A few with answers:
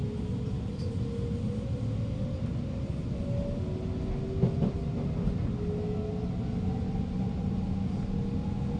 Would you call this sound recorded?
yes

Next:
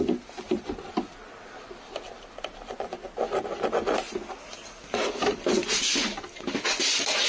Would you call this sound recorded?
yes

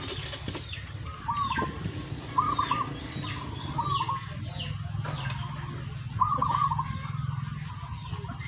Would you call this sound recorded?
yes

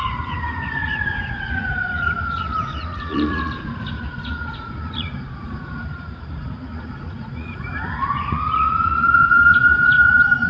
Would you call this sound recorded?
no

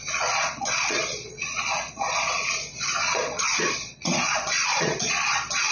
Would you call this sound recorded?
no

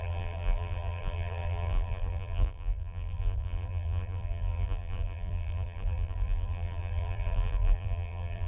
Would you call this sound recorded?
no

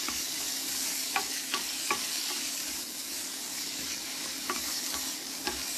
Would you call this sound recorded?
no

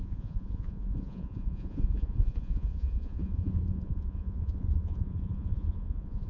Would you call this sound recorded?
no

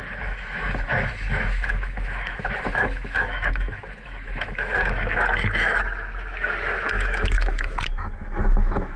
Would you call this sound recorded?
no